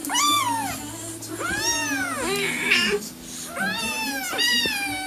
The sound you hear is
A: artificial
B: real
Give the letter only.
B